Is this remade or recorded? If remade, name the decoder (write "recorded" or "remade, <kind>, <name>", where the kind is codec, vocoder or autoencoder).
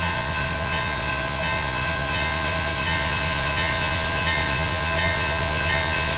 remade, vocoder, Vocos